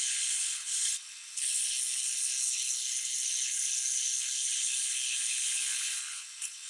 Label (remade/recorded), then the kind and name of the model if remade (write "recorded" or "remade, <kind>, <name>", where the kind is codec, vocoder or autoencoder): remade, codec, HILCodec